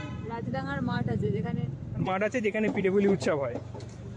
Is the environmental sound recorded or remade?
remade